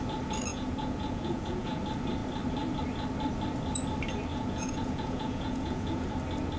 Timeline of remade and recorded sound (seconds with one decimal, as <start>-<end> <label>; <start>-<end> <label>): 0.0-0.5 recorded; 0.5-1.8 remade; 1.8-4.3 recorded; 4.3-6.1 remade; 6.1-6.6 recorded